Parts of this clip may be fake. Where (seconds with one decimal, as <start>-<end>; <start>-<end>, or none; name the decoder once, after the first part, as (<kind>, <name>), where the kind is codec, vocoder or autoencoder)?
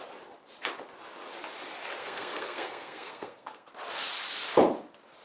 2.0-3.7 (codec, SNAC)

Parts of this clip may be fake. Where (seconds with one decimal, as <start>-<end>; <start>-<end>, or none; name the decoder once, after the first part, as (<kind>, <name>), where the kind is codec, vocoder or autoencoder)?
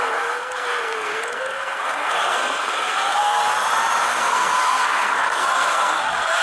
0.0-3.4 (codec, SNAC); 4.0-6.4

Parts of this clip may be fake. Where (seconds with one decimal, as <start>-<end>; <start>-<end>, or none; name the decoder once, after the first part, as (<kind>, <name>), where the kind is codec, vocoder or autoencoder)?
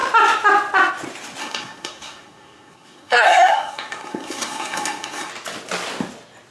1.4-5.3 (codec, SNAC)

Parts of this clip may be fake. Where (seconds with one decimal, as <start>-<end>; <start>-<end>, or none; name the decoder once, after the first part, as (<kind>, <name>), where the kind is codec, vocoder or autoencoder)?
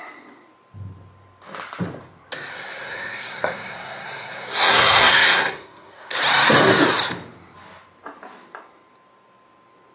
2.5-6.1 (codec, SNAC)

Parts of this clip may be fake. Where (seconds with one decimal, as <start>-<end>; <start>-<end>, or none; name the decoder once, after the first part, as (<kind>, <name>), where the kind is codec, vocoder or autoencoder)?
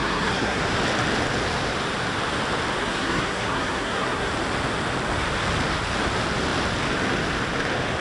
0.0-0.6 (codec, SNAC); 2.8-4.3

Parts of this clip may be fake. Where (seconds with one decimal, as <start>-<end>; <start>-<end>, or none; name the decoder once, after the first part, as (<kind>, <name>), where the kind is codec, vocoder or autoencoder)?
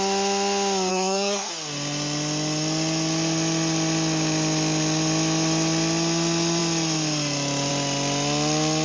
0.9-1.5 (codec, SNAC)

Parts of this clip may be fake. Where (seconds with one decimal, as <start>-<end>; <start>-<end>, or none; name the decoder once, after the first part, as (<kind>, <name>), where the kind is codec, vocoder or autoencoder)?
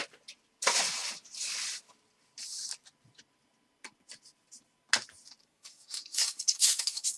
5.4-7.2 (codec, SNAC)